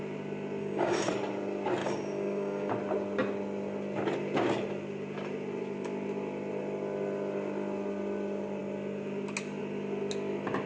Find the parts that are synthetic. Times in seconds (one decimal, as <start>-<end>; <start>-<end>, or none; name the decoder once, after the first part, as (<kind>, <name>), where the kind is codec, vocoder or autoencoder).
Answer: 0.6-1.1 (codec, DAC); 1.8-2.7